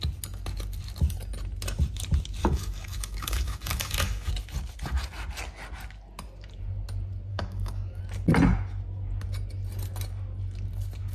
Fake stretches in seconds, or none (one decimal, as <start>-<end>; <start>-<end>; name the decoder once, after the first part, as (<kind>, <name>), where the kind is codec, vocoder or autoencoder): 2.4-4.3 (codec, DAC); 7.3-8.0